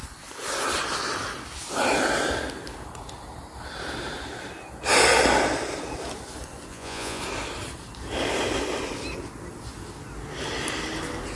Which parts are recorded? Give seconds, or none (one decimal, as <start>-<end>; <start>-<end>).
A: 0.0-6.7; 7.2-11.4